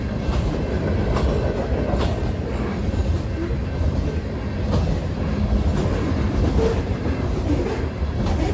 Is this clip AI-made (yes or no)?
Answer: no